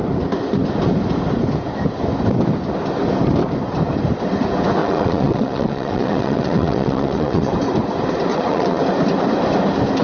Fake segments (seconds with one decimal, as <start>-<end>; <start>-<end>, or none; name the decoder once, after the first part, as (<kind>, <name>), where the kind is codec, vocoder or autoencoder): 4.8-7.5 (vocoder, WaveNeXt); 8.3-8.8